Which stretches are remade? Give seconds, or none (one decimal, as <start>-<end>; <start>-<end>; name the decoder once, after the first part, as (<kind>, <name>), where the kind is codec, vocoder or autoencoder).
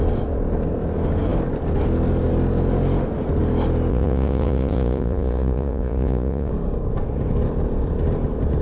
3.9-6.5 (vocoder, Vocos)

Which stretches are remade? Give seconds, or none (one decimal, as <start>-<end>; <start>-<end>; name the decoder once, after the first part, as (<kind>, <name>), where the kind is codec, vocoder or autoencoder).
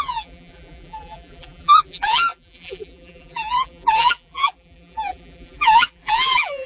0.0-6.7 (vocoder, BigVGAN v2)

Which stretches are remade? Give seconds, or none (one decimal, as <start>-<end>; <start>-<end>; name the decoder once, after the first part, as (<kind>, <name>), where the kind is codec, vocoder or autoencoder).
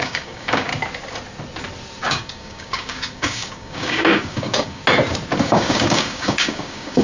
0.0-0.7 (codec, DAC); 2.0-4.8; 5.4-7.0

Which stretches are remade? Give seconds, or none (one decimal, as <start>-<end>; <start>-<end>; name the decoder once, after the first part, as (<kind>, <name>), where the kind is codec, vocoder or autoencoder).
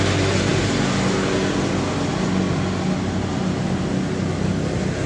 none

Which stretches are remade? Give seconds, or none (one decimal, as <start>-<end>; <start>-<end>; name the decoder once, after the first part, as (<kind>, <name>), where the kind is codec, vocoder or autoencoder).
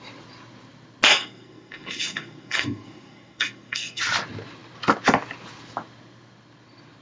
1.1-4.0 (codec, SNAC)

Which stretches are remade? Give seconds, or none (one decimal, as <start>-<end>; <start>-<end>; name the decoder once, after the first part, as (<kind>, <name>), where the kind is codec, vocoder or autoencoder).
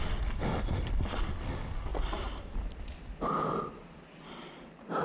none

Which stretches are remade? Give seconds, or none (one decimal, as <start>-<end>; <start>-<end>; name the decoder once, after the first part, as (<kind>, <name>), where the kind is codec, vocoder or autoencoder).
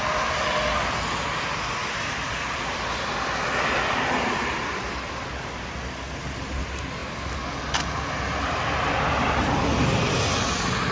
none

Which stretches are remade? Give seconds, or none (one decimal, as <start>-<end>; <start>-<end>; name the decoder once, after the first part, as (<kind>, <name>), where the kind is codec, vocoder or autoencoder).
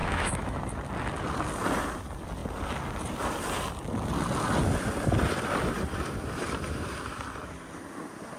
0.0-0.6 (autoencoder, DAC-VAE)